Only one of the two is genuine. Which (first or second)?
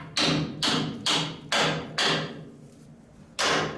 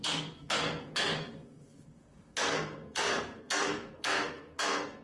first